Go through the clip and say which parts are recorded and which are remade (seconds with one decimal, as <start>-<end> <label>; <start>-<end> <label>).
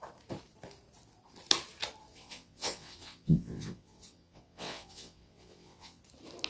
0.0-2.1 recorded; 2.1-6.0 remade; 6.0-6.5 recorded